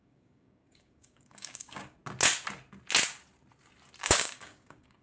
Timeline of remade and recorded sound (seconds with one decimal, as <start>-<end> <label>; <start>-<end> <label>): 0.0-2.0 remade; 2.0-4.0 recorded; 4.0-5.0 remade